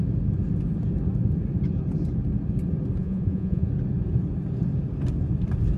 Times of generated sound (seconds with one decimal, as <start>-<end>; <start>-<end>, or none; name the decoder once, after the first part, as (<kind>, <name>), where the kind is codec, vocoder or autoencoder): 3.0-3.7 (vocoder, Vocos)